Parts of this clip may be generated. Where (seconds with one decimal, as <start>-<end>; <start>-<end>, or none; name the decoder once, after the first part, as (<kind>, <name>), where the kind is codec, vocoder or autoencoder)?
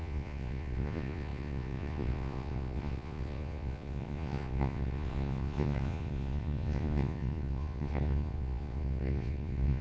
0.0-9.8 (vocoder, Vocos)